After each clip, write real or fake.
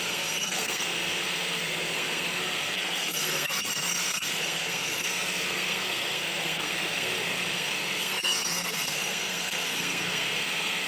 fake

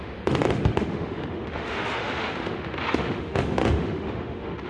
fake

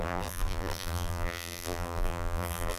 fake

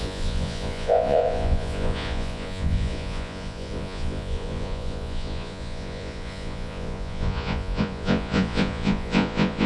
fake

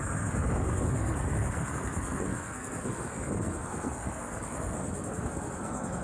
fake